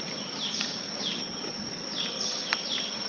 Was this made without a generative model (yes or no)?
yes